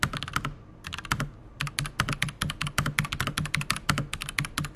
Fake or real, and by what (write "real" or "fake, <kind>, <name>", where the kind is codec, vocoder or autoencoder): real